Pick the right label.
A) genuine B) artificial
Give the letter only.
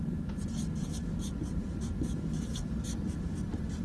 A